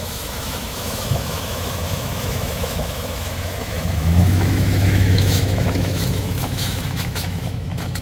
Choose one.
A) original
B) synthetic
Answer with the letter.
B